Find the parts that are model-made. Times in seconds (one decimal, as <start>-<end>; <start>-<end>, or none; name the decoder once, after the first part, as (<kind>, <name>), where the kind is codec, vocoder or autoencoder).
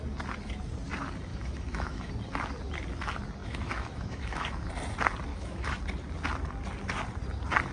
1.3-2.1 (autoencoder, DAC-VAE); 3.4-4.7; 5.3-5.8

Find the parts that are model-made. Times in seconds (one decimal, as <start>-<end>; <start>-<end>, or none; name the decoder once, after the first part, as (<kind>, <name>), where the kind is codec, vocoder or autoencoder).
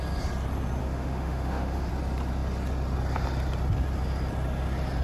0.8-1.9 (autoencoder, DAC-VAE)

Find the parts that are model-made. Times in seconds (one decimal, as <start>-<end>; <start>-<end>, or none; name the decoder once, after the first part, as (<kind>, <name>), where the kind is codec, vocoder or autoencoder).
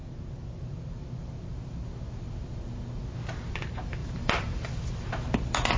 none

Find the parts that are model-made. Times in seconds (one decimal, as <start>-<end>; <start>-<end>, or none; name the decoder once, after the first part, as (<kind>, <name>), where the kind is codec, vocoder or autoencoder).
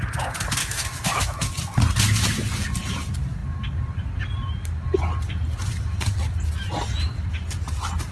0.6-1.5 (autoencoder, DAC-VAE)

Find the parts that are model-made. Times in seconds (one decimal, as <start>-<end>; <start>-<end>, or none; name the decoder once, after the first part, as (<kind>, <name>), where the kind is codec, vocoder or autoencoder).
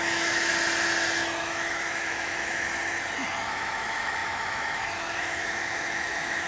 0.0-0.5 (autoencoder, DAC-VAE); 1.4-2.8; 3.4-6.5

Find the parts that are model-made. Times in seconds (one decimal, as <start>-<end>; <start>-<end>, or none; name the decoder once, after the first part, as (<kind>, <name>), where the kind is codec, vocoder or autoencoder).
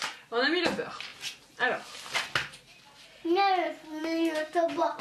4.0-4.6 (autoencoder, DAC-VAE)